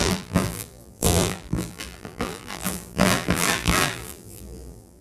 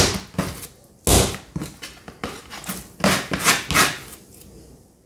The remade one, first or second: first